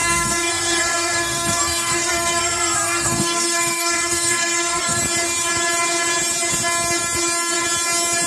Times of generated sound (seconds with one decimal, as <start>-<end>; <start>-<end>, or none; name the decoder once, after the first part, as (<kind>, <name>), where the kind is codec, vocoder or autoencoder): 0.0-5.0 (codec, SNAC)